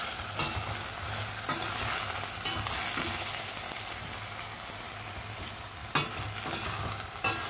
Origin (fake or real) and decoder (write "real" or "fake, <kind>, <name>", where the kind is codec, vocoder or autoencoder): real